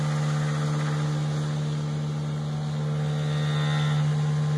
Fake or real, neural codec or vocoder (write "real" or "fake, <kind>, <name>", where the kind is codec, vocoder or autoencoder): real